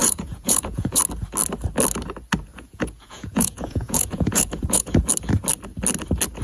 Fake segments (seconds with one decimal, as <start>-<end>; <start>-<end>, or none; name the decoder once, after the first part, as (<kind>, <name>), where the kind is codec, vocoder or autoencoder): 0.0-1.0 (vocoder, Vocos); 2.5-5.1